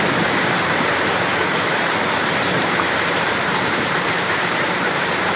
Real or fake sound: fake